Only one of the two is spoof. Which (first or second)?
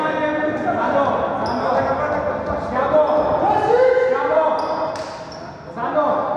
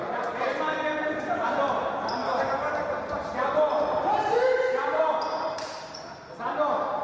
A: second